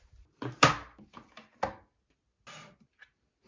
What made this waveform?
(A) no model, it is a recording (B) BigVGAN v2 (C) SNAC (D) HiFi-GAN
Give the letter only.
A